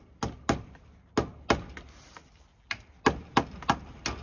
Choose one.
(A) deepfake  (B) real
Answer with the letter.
B